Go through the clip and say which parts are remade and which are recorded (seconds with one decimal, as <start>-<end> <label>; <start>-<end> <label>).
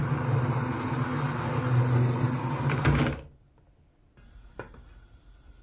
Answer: 0.0-5.6 recorded